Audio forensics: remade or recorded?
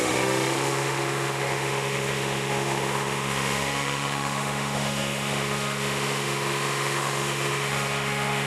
remade